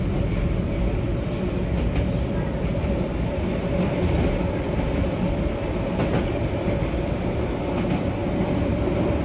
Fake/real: real